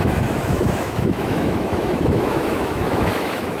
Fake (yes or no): yes